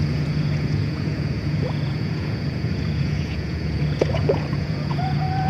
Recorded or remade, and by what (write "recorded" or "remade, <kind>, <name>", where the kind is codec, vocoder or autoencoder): remade, vocoder, Vocos